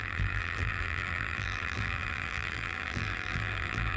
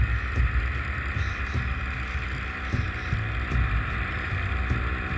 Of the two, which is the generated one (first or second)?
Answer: first